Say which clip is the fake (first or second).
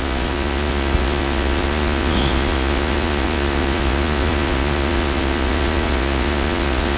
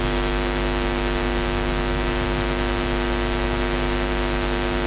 first